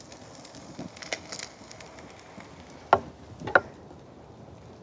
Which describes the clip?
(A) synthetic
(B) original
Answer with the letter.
B